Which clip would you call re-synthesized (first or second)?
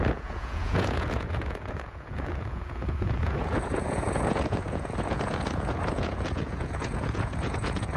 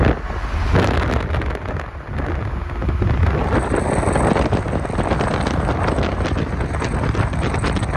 first